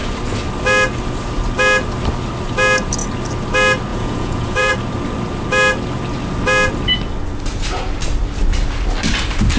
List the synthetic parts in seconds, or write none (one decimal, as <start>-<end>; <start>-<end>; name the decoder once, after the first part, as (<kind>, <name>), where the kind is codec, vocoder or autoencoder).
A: 3.9-4.7 (vocoder, Vocos)